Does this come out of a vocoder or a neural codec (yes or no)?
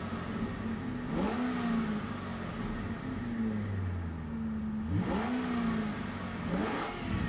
no